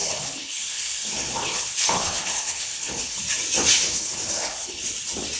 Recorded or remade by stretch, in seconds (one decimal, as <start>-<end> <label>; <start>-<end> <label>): 0.0-3.2 remade; 3.2-3.9 recorded; 3.9-4.8 remade; 4.8-5.4 recorded